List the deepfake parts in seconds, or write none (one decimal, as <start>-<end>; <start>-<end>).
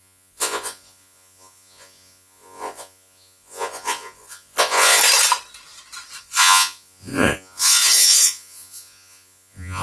0.0-5.0; 6.2-9.8